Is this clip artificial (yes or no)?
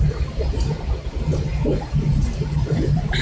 yes